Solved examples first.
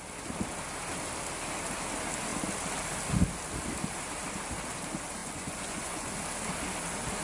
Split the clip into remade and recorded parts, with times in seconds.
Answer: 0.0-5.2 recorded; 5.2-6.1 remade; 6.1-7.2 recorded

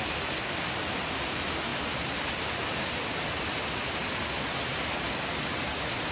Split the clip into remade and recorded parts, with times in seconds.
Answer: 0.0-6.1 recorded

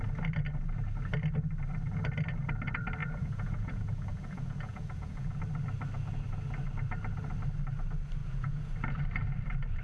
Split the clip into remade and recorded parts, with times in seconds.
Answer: 0.0-3.0 recorded; 3.0-5.4 remade; 5.4-8.2 recorded; 8.2-8.7 remade; 8.7-9.8 recorded

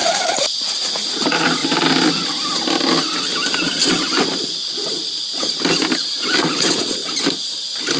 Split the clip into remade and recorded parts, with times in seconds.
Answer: 0.0-1.6 remade; 1.6-6.4 recorded; 6.4-7.0 remade; 7.0-8.0 recorded